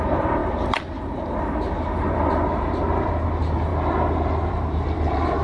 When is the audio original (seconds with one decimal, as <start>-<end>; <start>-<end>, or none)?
3.7-4.5